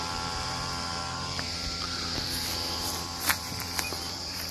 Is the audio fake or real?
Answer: fake